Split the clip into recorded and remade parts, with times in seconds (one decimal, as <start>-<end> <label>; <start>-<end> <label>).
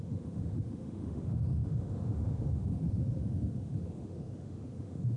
0.0-5.2 remade